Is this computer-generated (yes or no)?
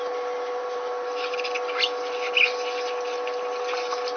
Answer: no